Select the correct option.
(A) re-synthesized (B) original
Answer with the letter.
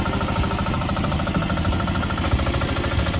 B